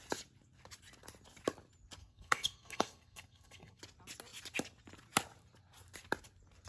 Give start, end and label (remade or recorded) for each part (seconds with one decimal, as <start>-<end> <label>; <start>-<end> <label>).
0.0-2.0 recorded; 2.0-3.8 remade; 3.8-6.7 recorded